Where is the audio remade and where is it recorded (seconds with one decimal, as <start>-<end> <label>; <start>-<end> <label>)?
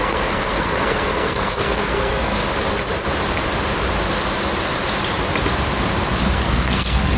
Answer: 0.0-2.4 remade; 2.4-6.3 recorded; 6.3-7.2 remade